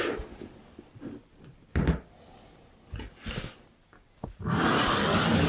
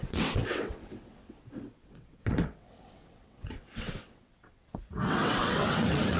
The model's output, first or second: second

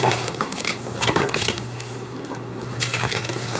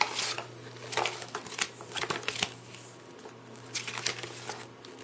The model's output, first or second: first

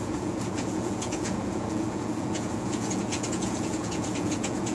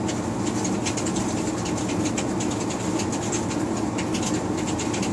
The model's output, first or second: first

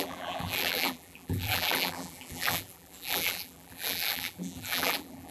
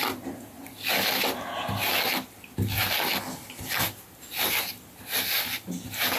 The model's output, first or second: first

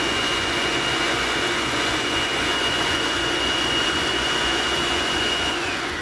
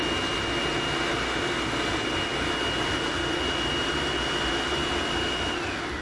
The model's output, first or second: first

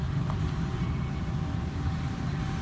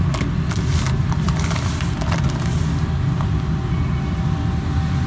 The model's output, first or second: first